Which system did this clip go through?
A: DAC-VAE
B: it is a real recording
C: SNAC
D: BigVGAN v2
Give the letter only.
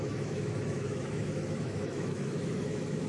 A